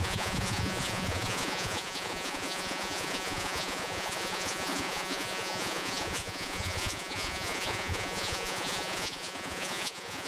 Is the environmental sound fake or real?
fake